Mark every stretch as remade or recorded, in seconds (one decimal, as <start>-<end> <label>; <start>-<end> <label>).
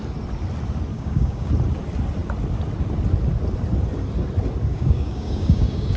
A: 0.0-0.9 recorded; 0.9-1.5 remade; 1.5-4.7 recorded; 4.7-6.0 remade